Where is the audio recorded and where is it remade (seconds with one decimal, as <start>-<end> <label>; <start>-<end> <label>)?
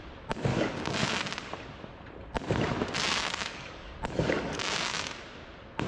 0.0-0.5 recorded; 0.5-1.2 remade; 1.2-3.2 recorded; 3.2-5.1 remade; 5.1-5.9 recorded